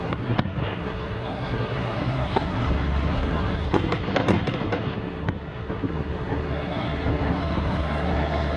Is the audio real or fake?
fake